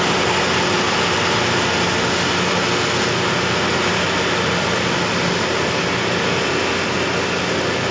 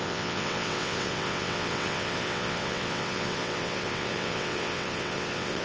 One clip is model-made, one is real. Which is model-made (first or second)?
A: second